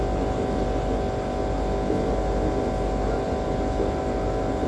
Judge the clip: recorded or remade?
recorded